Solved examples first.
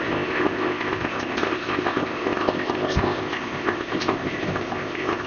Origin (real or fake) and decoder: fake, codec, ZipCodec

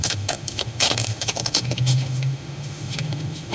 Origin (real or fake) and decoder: fake, autoencoder, DAC-VAE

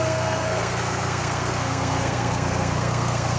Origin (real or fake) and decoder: fake, codec, SNAC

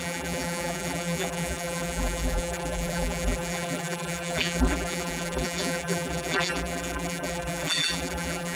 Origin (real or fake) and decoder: fake, vocoder, BigVGAN v2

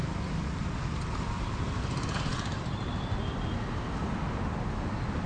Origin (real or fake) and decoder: real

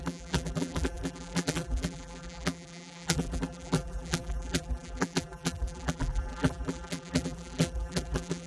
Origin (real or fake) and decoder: fake, vocoder, BigVGAN v2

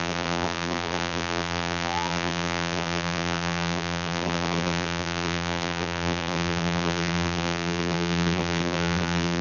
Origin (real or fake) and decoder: fake, vocoder, BigVGAN v2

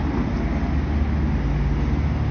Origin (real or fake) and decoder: real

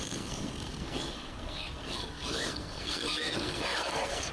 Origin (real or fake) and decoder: fake, codec, SNAC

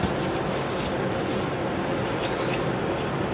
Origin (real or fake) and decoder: real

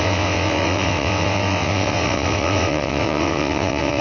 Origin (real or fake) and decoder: fake, vocoder, WaveNeXt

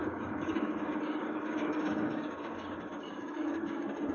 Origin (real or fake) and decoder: fake, codec, DAC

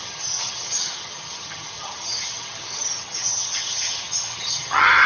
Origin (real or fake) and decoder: fake, vocoder, HiFi-GAN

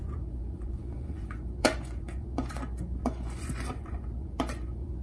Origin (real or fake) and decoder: fake, vocoder, Vocos